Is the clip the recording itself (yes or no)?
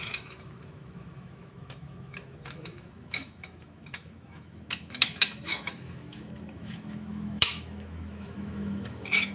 no